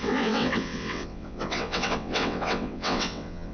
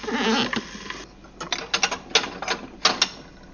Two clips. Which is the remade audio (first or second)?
first